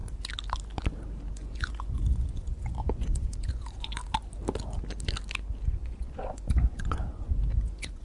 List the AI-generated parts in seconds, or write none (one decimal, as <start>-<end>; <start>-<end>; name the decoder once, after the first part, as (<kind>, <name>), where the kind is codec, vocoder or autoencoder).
1.3-4.0 (vocoder, Vocos); 5.7-8.0